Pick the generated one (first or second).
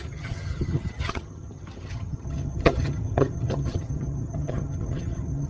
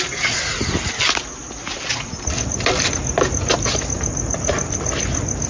first